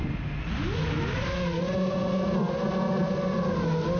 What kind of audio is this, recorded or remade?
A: recorded